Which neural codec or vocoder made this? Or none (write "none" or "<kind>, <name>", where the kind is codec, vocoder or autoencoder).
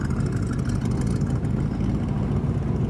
none